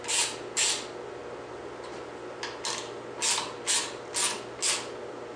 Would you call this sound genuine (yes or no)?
yes